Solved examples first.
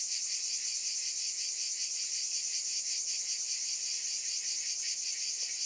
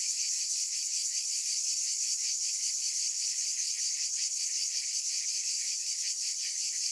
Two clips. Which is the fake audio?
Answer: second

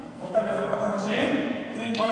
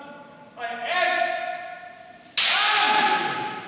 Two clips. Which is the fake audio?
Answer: first